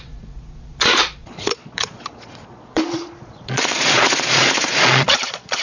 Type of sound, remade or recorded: remade